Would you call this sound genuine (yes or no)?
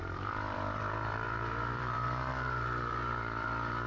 no